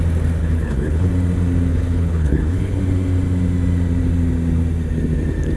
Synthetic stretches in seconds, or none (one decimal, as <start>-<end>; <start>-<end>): 0.4-1.1; 1.7-2.8